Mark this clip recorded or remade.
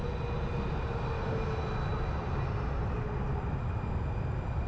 recorded